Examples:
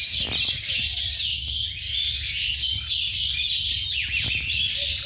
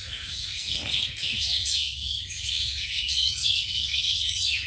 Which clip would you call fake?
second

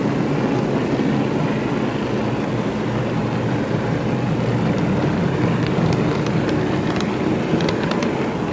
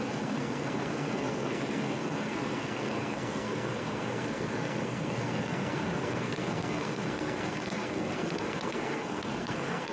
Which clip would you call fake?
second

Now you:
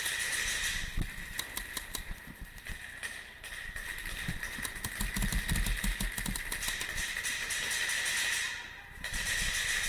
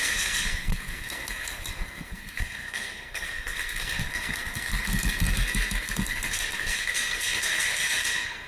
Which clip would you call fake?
second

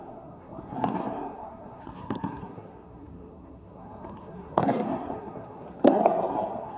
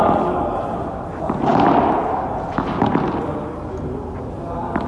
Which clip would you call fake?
first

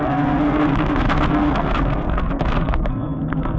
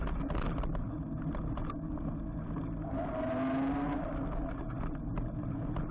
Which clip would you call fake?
first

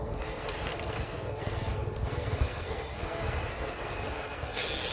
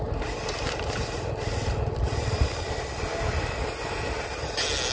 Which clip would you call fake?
first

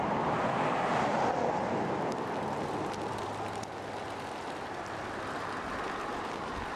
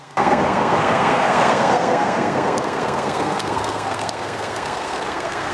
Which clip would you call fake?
second